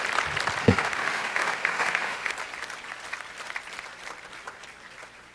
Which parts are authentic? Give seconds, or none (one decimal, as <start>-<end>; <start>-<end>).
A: 0.0-0.6; 2.3-5.3

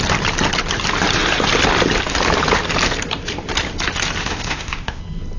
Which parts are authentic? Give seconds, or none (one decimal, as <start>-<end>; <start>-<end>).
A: 0.0-4.2; 5.0-5.4

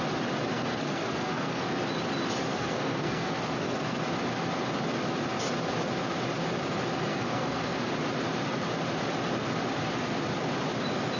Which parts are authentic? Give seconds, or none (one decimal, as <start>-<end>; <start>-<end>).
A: 0.0-0.5; 1.7-2.5; 4.0-7.1; 7.9-11.2

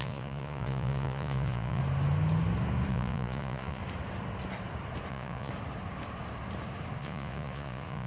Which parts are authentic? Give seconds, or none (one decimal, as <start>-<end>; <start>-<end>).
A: 1.8-2.9; 3.8-5.1; 5.5-7.0

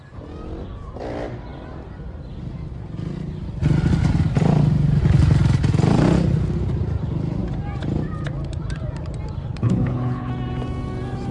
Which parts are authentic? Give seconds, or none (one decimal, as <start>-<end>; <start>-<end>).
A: 0.0-9.5; 10.3-11.3

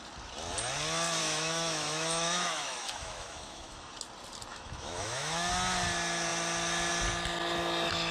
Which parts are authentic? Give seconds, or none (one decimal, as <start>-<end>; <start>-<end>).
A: 0.0-1.2; 3.9-4.5; 5.5-8.1

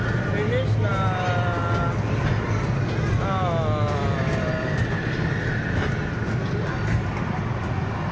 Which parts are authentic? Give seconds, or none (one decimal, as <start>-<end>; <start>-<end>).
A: 0.0-8.1